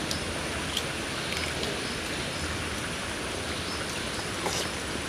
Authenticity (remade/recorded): recorded